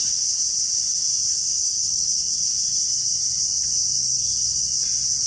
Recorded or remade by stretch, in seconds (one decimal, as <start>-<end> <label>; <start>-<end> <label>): 0.0-1.3 recorded; 1.3-2.3 remade; 2.3-4.0 recorded; 4.0-4.7 remade; 4.7-5.3 recorded